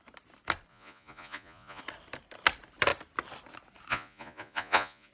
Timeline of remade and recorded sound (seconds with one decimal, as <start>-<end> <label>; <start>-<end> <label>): 0.0-0.7 recorded; 0.7-1.8 remade; 1.8-3.9 recorded; 3.9-5.1 remade